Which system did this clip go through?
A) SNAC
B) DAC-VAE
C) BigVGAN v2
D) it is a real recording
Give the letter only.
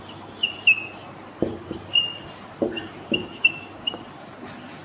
D